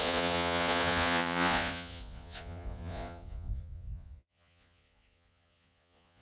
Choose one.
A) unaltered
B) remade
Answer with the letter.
B